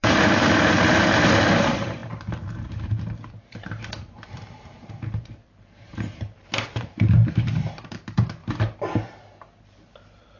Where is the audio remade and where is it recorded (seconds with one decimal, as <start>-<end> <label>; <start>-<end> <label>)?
0.0-8.4 remade; 8.4-9.6 recorded; 9.6-10.4 remade